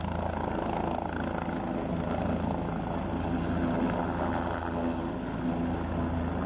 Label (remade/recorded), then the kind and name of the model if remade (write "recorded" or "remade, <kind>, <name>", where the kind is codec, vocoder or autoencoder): recorded